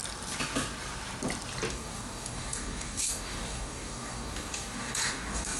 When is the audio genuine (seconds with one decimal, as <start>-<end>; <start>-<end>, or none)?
0.0-1.7